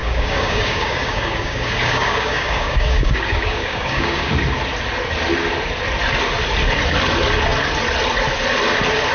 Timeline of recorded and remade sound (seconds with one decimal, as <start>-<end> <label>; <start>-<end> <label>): 0.0-4.3 remade; 4.3-9.1 recorded